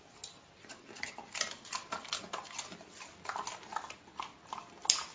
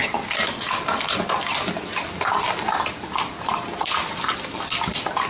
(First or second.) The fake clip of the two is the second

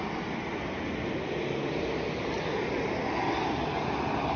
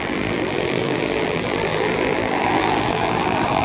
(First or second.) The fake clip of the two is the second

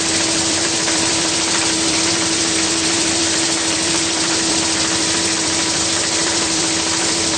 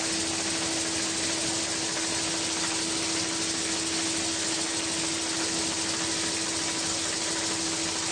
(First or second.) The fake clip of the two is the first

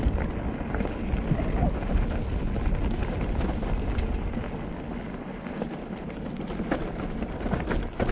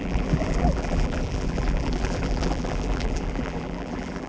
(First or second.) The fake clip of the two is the second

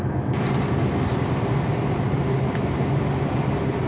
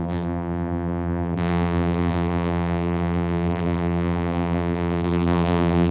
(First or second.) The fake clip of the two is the second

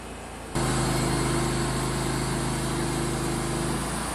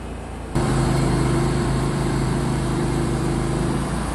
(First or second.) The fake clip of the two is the second